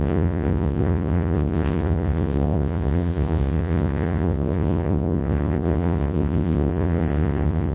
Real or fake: fake